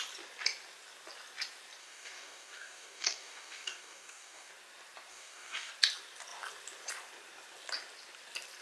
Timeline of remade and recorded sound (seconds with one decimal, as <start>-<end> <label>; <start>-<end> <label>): 0.0-1.8 recorded; 1.8-4.5 remade; 4.5-5.1 recorded; 5.1-5.7 remade; 5.7-8.6 recorded